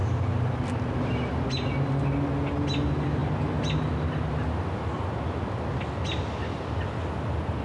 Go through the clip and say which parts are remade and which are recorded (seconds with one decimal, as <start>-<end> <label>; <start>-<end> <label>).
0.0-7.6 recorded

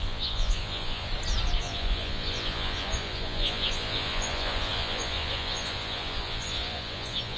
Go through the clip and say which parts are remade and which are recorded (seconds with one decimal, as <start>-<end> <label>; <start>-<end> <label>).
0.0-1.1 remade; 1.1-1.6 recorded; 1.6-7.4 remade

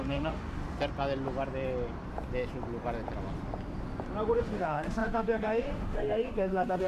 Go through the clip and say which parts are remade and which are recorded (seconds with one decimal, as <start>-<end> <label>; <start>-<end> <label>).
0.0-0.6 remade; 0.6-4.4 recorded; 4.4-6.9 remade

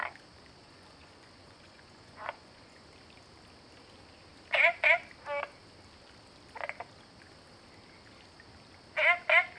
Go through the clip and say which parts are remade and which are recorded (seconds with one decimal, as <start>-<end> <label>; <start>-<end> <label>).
0.0-0.6 recorded; 0.6-2.9 remade; 2.9-9.6 recorded